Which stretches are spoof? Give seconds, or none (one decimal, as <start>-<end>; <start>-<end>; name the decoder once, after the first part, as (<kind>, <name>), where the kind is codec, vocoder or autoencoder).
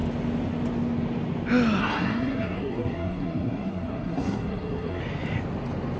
1.8-5.0 (codec, SNAC)